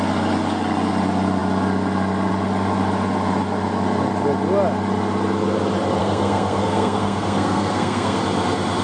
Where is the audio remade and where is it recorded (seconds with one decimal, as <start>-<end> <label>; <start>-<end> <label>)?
0.0-6.0 recorded; 6.0-8.2 remade; 8.2-8.8 recorded

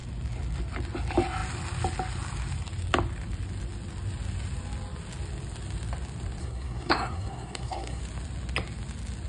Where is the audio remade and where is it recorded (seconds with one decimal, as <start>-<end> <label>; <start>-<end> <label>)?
0.0-6.4 recorded; 6.4-8.0 remade; 8.0-9.3 recorded